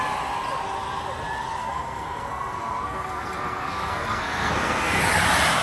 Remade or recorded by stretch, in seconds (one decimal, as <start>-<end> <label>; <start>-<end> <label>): 0.0-1.6 recorded; 1.6-5.0 remade; 5.0-5.6 recorded